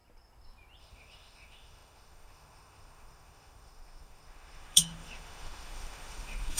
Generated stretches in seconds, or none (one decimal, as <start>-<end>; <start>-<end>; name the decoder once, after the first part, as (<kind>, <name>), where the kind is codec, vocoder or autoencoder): 0.8-6.6 (autoencoder, DAC-VAE)